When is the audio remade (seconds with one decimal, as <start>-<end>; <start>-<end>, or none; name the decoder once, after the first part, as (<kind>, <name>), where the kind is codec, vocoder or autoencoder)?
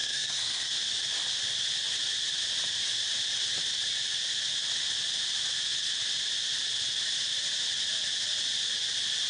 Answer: 0.0-0.7 (codec, SNAC)